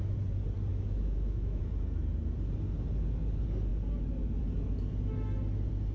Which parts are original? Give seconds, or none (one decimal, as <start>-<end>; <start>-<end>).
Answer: 0.0-0.7; 1.6-5.9